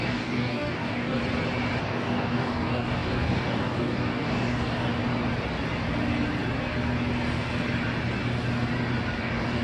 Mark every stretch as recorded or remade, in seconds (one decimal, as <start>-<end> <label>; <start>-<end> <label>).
0.0-1.2 remade; 1.2-1.8 recorded; 1.8-4.9 remade; 4.9-9.2 recorded; 9.2-9.6 remade